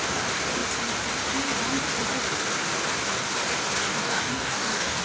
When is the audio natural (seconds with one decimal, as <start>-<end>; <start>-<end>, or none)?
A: 0.0-3.8

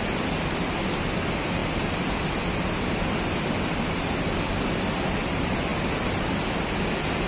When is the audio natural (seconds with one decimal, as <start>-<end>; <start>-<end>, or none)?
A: 0.0-7.3

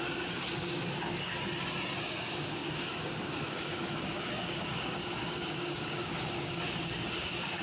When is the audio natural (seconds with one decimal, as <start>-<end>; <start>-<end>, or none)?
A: 1.3-2.0

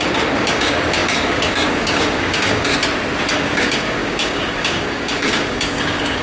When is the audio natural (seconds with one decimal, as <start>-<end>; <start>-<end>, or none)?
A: 2.7-3.3

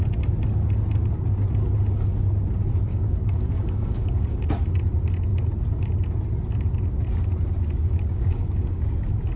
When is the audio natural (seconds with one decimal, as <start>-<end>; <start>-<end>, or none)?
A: 0.0-2.9; 4.4-7.8; 8.8-9.4

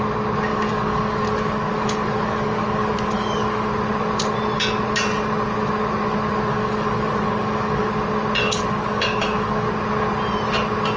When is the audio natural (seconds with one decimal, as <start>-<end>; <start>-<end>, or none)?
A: 0.0-0.5; 3.7-6.5; 7.9-8.4; 9.7-11.0